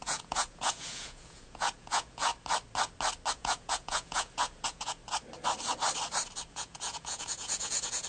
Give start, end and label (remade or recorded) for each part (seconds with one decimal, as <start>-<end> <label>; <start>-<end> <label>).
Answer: 0.0-2.3 remade; 2.3-3.3 recorded; 3.3-5.0 remade; 5.0-6.5 recorded; 6.5-8.1 remade